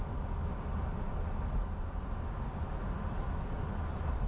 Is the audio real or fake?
real